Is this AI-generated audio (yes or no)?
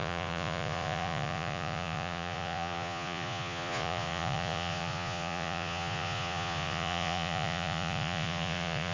yes